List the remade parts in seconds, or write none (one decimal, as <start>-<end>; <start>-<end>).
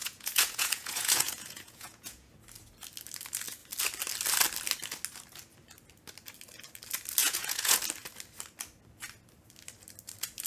0.0-2.3; 7.2-7.8